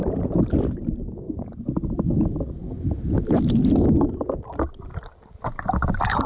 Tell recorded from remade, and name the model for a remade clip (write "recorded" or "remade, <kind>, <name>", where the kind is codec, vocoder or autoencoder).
recorded